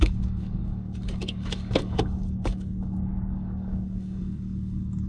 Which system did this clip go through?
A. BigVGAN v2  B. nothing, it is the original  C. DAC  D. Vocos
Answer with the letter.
C